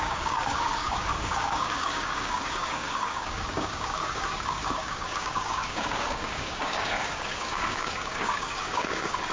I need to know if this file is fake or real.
fake